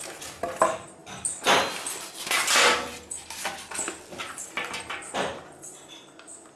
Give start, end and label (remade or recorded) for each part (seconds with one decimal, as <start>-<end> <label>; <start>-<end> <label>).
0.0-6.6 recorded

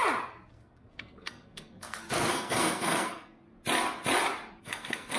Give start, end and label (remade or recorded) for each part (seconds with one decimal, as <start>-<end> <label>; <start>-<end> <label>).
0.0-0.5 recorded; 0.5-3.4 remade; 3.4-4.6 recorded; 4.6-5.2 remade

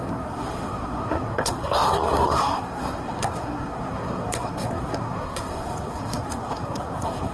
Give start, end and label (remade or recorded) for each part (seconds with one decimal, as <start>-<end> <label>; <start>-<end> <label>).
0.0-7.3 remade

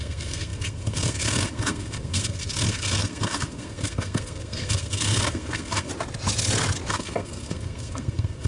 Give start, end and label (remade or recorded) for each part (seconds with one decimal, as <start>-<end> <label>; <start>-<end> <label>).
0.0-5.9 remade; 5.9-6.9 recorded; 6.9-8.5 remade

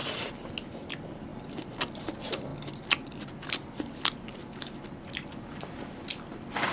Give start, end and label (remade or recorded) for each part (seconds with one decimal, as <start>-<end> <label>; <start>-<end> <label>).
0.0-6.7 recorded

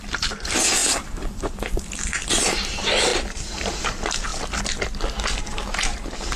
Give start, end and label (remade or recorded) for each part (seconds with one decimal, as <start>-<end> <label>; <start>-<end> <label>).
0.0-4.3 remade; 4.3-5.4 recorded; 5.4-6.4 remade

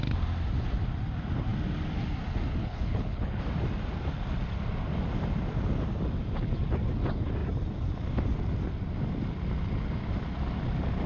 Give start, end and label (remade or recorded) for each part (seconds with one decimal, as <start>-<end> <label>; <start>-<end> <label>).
0.0-2.6 recorded; 2.6-3.4 remade; 3.4-11.1 recorded